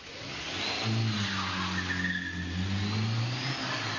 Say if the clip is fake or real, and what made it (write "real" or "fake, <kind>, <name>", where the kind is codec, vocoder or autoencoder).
real